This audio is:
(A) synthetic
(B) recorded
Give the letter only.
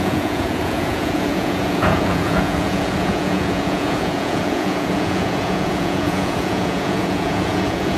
A